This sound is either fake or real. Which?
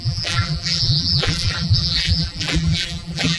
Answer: fake